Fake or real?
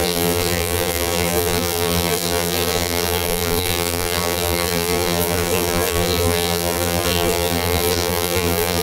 fake